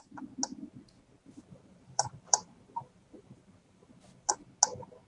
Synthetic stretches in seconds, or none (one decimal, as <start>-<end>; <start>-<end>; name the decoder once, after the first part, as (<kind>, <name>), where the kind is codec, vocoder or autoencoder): 1.2-4.3 (vocoder, BigVGAN v2)